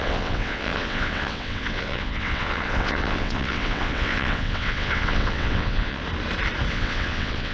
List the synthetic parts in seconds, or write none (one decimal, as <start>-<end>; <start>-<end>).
0.0-6.0; 6.7-7.5